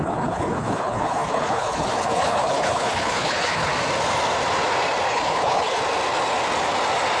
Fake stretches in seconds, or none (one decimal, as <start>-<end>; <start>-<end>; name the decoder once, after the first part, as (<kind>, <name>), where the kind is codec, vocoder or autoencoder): 0.0-3.7 (codec, HILCodec); 5.1-5.8